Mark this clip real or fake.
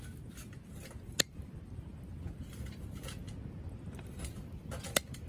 real